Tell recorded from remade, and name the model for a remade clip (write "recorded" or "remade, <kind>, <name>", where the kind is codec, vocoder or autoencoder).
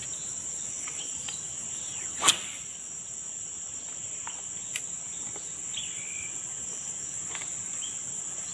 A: recorded